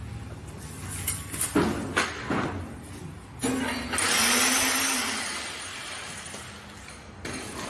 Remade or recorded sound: recorded